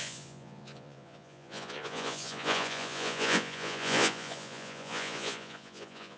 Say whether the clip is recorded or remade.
remade